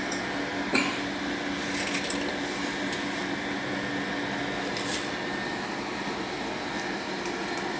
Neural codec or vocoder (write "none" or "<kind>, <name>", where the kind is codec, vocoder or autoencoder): none